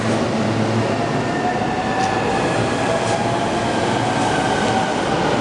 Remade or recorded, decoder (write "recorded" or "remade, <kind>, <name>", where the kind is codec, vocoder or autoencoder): recorded